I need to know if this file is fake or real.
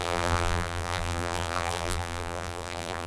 fake